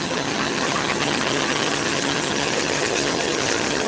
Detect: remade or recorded remade